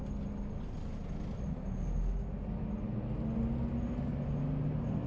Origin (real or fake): real